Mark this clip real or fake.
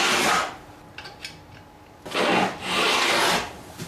real